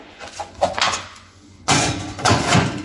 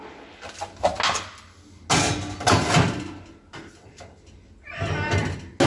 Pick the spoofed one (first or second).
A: first